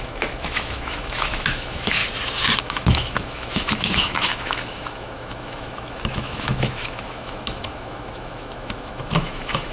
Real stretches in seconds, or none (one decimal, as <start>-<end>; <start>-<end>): 2.0-2.6